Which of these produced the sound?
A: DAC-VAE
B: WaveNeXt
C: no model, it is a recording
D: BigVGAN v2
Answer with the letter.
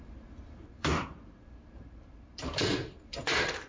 D